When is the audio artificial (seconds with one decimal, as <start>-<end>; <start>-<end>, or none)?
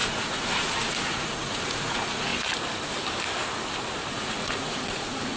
0.0-2.3; 4.1-5.4